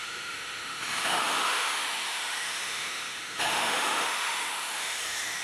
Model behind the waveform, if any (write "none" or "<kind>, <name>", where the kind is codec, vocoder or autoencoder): autoencoder, DAC-VAE